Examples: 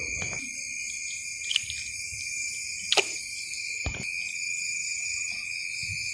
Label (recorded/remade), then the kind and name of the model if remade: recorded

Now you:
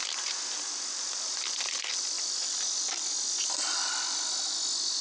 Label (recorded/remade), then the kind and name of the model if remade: recorded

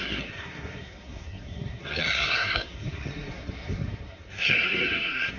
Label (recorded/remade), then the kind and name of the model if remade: remade, codec, SNAC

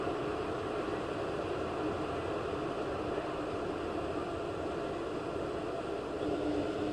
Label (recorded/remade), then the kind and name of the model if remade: recorded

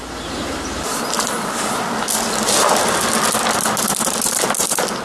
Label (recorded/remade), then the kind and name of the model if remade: recorded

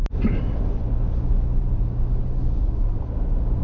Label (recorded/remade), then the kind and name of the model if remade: recorded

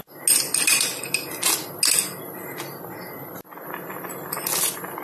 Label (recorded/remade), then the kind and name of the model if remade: recorded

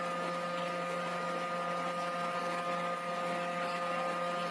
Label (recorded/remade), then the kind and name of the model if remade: recorded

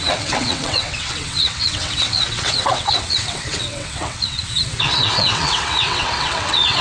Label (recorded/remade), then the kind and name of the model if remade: remade, vocoder, WaveNeXt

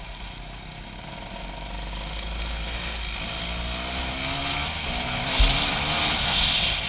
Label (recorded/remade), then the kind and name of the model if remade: recorded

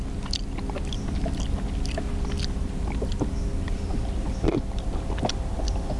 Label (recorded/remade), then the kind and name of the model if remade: recorded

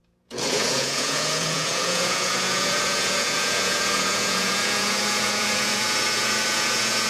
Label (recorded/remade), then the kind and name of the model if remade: remade, vocoder, Vocos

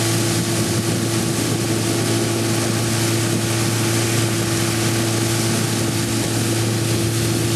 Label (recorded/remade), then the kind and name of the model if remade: recorded